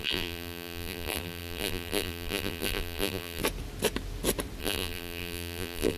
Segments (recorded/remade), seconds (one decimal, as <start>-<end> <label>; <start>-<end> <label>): 0.0-3.4 remade; 3.4-4.6 recorded; 4.6-6.0 remade